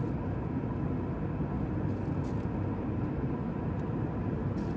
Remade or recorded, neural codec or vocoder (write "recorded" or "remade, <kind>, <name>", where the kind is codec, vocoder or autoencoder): recorded